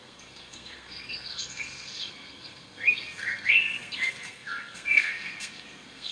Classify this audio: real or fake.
fake